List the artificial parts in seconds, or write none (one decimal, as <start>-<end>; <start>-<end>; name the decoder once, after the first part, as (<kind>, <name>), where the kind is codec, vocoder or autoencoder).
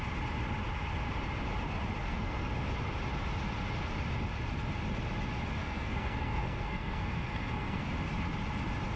2.0-2.5 (codec, SNAC); 5.6-7.9